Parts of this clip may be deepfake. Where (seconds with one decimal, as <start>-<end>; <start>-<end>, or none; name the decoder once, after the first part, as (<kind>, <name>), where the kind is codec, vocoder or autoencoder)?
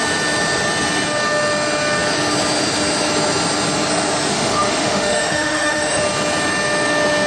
4.3-6.0 (autoencoder, DAC-VAE)